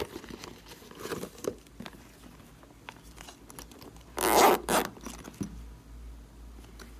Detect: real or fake real